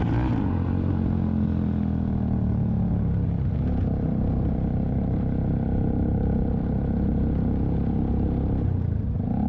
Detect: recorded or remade recorded